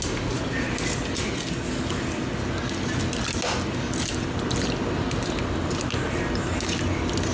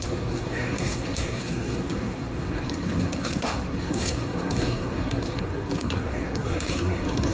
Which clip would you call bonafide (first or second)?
first